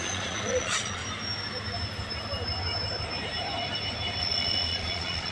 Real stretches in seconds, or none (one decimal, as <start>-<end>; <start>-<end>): 1.0-4.2